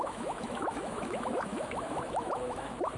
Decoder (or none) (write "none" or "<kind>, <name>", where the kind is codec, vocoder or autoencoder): autoencoder, DAC-VAE